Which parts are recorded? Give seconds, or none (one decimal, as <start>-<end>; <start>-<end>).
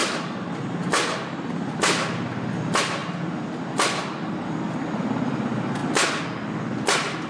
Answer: 0.0-7.3